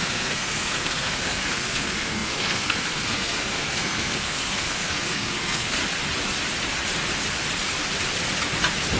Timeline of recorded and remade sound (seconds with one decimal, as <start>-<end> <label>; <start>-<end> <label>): 0.0-5.8 remade; 5.8-9.0 recorded